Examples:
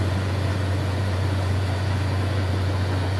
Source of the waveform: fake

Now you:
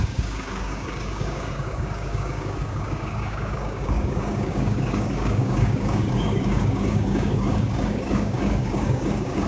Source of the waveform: fake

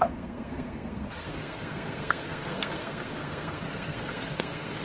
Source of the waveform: fake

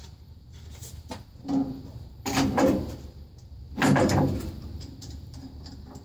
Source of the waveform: fake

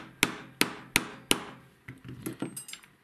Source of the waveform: real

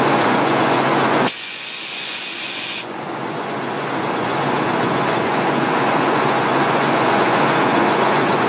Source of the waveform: fake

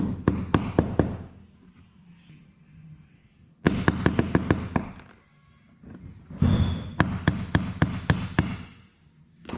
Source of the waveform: real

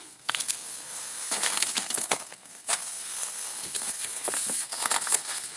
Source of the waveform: fake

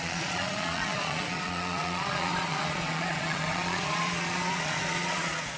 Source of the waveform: fake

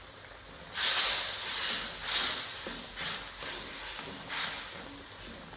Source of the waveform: real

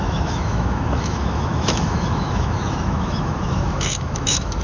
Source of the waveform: fake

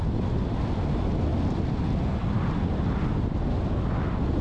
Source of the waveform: real